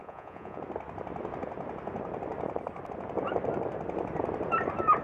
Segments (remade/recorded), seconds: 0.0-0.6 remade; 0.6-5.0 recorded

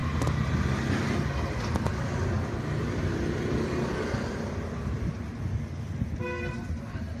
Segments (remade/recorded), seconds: 0.0-7.2 recorded

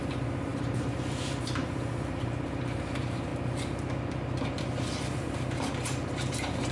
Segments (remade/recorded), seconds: 0.0-3.3 remade; 3.3-5.0 recorded; 5.0-6.7 remade

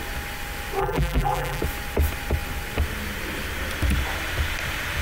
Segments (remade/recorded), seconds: 0.0-0.8 recorded; 0.8-1.6 remade; 1.6-5.0 recorded

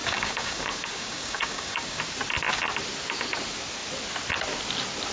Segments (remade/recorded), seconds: 0.0-2.0 remade; 2.0-5.1 recorded

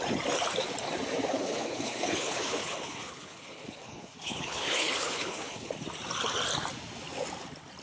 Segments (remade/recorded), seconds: 0.0-1.3 recorded; 1.3-5.7 remade; 5.7-7.8 recorded

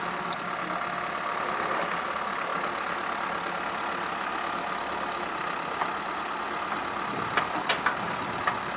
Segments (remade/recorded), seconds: 0.0-8.8 recorded